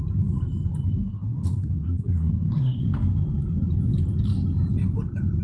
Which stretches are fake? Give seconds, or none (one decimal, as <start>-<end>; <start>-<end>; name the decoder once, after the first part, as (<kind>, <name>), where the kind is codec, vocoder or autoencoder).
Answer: 1.0-2.8 (codec, SNAC)